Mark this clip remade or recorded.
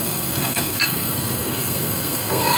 remade